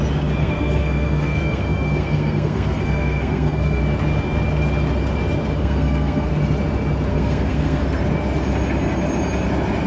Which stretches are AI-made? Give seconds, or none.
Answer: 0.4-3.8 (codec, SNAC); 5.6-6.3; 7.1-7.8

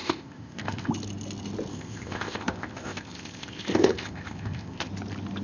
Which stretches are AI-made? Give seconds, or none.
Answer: 0.0-0.9 (codec, ZipCodec); 1.7-4.9

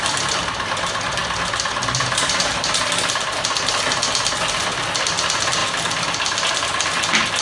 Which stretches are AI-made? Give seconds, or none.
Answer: none

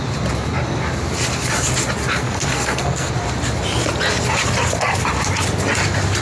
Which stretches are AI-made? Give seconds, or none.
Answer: 2.2-3.1 (codec, SNAC)

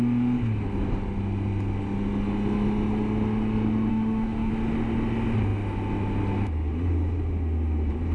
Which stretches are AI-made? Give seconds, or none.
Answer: 3.9-4.5 (autoencoder, DAC-VAE)

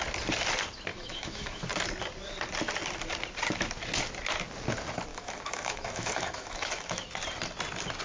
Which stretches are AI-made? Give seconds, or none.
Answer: 0.9-1.6 (autoencoder, DAC-VAE); 5.1-7.1